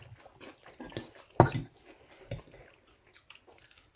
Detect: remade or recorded recorded